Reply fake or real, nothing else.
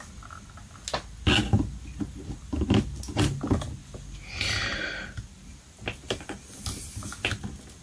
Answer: real